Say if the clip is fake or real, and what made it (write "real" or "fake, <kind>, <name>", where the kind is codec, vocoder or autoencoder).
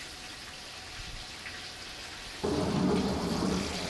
real